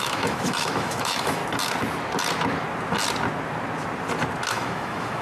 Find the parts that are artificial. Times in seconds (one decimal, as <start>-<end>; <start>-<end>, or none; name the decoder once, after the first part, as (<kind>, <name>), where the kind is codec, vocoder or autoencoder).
0.0-1.4 (autoencoder, DAC-VAE); 4.5-5.2